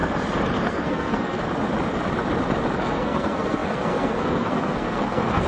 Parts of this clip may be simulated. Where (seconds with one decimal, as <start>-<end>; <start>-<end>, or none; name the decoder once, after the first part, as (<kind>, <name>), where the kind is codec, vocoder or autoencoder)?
0.6-1.4 (codec, SNAC); 2.8-5.5